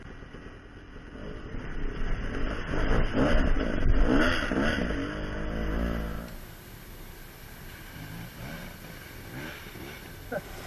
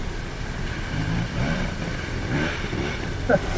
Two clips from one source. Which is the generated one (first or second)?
second